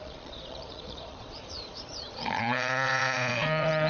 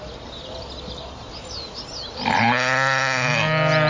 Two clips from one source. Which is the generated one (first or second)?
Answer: first